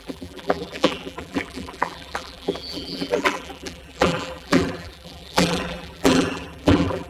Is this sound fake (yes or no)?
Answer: yes